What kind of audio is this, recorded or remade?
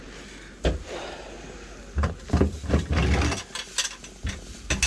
recorded